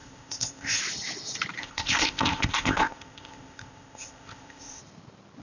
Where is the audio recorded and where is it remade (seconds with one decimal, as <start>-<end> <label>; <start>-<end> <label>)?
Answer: 0.0-0.8 remade; 0.8-1.6 recorded; 1.6-4.8 remade; 4.8-5.4 recorded